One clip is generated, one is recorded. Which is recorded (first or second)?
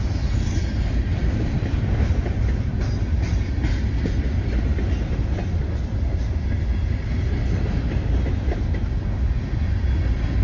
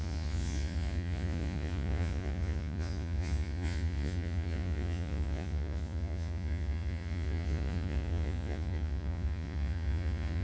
first